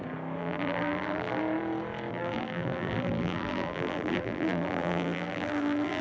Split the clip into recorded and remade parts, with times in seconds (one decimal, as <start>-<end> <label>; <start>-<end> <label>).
0.0-0.4 recorded; 0.4-1.4 remade; 1.4-2.1 recorded; 2.1-6.0 remade